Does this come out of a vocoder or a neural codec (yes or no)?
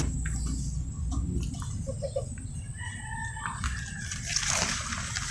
no